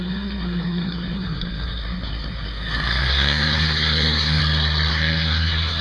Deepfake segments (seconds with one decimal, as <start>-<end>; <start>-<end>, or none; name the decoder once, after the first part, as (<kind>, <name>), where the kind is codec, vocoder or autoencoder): 0.0-4.4 (codec, SNAC); 4.9-5.8